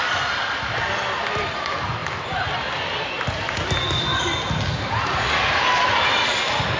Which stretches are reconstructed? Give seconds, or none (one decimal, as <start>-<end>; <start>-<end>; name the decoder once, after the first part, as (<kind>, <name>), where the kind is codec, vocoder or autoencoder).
none